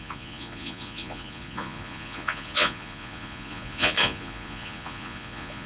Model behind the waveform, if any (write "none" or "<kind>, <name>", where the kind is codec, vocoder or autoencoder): vocoder, Vocos